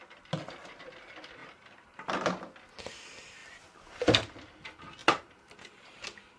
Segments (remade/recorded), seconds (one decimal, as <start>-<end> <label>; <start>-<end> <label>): 0.0-1.4 recorded; 1.4-2.3 remade; 2.3-5.0 recorded; 5.0-6.0 remade; 6.0-6.4 recorded